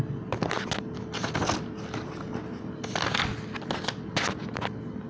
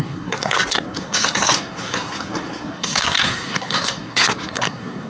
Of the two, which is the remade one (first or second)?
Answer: second